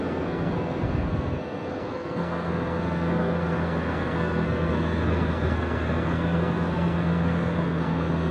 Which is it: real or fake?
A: fake